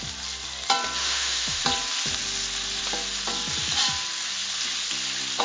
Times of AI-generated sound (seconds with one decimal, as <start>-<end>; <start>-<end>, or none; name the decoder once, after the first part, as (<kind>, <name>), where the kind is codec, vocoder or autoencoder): 1.0-1.6 (autoencoder, DAC-VAE)